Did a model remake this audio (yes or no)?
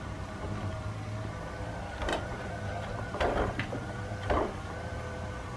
no